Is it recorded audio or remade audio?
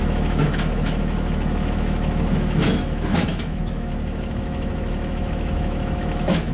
remade